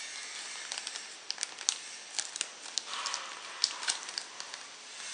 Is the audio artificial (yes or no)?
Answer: no